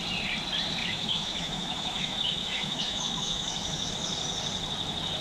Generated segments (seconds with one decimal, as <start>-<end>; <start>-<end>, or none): 0.8-3.9

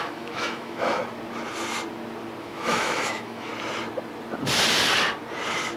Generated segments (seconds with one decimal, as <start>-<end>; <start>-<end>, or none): 0.0-1.0; 2.4-3.5

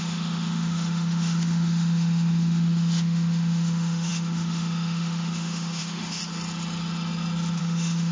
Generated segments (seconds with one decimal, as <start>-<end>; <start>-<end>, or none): 0.0-6.2; 7.6-8.1

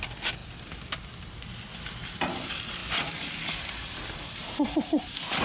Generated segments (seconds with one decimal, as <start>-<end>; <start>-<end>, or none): none

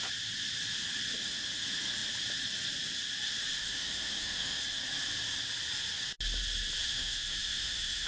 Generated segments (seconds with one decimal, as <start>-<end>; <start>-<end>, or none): 3.6-4.6; 6.8-8.1

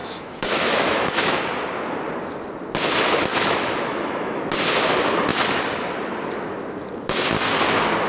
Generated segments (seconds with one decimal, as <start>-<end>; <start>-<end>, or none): 0.0-1.4; 3.3-4.4

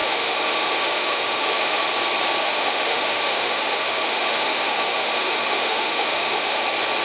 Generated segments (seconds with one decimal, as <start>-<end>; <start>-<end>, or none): 0.0-1.9; 2.4-6.6

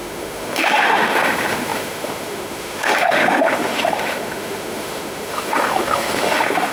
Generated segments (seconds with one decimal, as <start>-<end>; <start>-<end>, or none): 0.0-6.7